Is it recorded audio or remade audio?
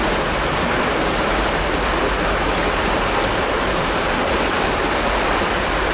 recorded